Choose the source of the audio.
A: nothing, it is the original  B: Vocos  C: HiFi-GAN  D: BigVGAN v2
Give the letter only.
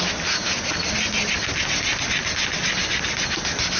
A